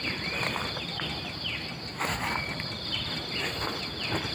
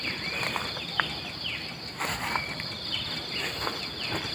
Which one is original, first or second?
first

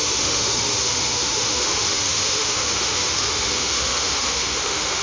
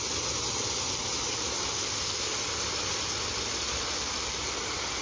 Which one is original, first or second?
second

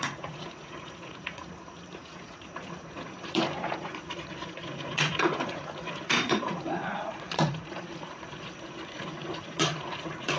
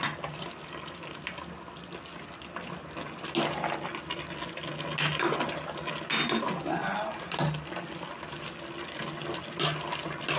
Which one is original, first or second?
second